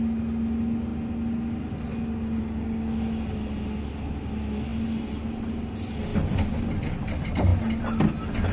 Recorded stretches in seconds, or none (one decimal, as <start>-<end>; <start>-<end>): 0.0-8.5